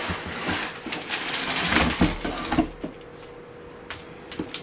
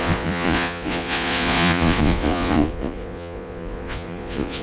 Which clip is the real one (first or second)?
first